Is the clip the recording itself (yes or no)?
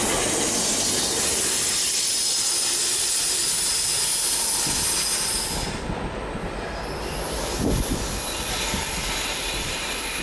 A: yes